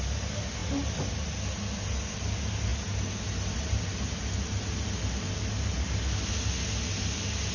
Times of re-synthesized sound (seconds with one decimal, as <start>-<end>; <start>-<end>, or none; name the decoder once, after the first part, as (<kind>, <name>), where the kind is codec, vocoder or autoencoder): none